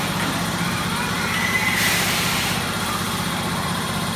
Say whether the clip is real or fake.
fake